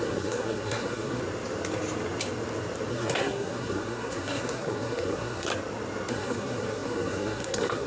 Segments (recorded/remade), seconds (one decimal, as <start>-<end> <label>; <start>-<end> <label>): 0.0-1.2 remade; 1.2-2.9 recorded; 2.9-5.5 remade; 5.5-6.1 recorded; 6.1-7.9 remade